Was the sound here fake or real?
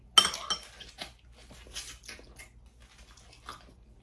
real